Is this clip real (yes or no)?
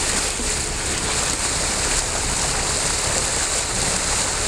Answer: no